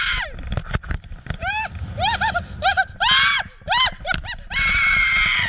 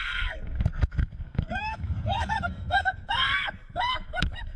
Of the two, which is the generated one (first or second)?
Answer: second